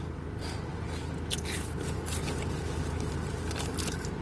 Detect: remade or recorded recorded